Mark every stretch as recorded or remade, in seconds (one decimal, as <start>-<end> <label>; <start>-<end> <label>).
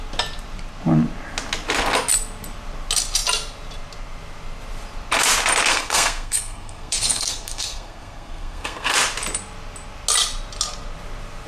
0.0-5.7 recorded; 5.7-8.9 remade; 8.9-11.5 recorded